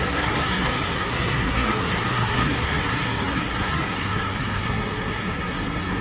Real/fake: fake